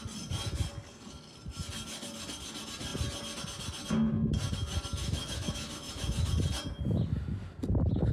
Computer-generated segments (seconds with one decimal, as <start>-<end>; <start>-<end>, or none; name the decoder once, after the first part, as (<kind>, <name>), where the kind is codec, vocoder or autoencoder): 5.0-6.3 (autoencoder, DAC-VAE)